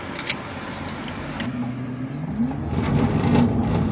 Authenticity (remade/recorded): recorded